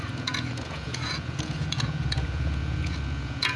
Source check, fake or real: fake